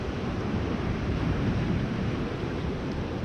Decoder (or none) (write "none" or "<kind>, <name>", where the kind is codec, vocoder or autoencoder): vocoder, BigVGAN v2